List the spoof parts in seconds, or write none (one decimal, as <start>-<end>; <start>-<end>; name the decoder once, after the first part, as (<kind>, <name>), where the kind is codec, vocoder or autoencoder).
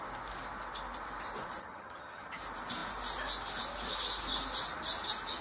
1.6-2.4 (vocoder, HiFi-GAN)